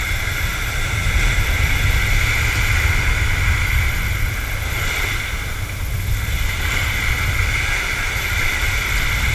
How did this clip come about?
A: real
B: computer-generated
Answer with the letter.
A